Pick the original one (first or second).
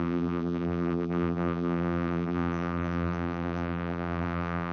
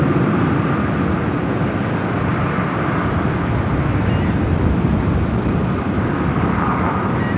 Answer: second